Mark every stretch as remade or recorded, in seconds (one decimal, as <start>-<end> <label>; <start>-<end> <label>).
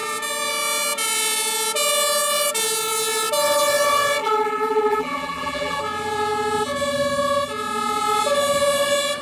0.0-4.2 recorded; 4.2-5.8 remade; 5.8-9.2 recorded